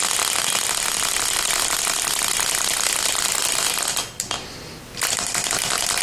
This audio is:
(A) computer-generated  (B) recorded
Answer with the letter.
B